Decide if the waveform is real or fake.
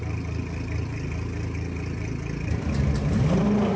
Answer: real